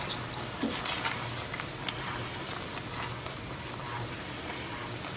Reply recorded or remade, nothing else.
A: recorded